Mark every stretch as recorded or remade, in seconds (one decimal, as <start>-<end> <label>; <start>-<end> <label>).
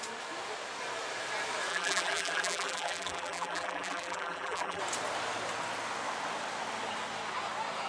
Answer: 0.0-1.7 recorded; 1.7-4.8 remade; 4.8-7.9 recorded